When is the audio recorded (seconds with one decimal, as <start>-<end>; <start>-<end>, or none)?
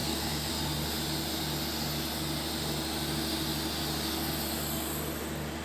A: 0.5-5.6